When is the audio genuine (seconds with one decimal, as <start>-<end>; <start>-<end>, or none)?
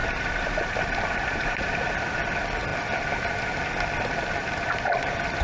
1.9-5.4